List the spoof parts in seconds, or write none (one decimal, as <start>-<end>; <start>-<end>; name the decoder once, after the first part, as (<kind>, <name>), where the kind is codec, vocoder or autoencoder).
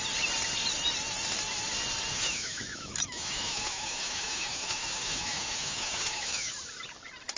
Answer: 2.1-6.5 (autoencoder, DAC-VAE)